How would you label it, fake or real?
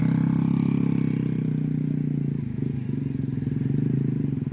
real